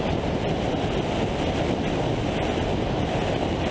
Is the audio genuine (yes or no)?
yes